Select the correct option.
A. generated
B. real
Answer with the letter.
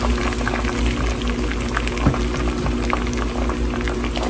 B